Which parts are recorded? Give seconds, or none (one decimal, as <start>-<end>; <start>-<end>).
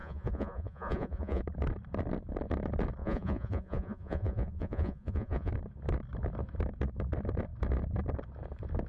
1.4-3.0; 5.5-8.9